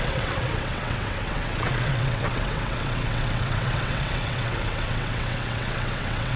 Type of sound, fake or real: fake